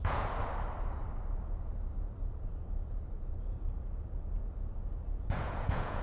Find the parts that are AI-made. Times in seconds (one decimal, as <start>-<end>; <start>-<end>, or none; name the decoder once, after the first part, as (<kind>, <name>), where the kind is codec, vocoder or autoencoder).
0.0-0.4 (vocoder, Vocos); 3.2-4.4; 5.2-6.0